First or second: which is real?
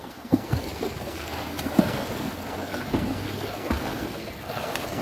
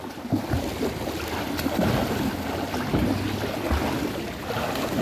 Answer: second